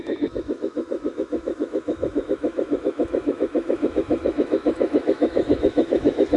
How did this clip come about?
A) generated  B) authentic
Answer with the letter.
A